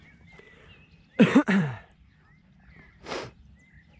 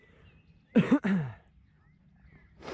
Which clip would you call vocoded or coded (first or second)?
first